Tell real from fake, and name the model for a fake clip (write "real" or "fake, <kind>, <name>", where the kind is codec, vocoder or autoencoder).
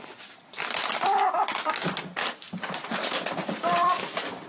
fake, vocoder, BigVGAN v2